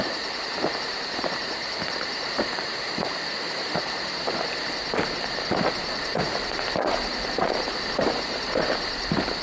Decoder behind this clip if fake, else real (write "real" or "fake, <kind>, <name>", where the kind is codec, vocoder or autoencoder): fake, vocoder, BigVGAN v2